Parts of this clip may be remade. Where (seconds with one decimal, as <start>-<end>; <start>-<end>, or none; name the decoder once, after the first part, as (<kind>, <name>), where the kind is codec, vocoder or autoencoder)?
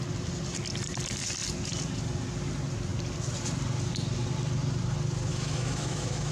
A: 5.3-6.3 (autoencoder, DAC-VAE)